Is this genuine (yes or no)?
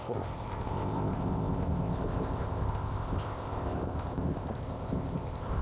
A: no